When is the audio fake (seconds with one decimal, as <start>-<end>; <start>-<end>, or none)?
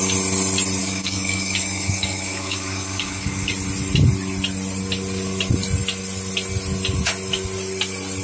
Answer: 0.8-3.5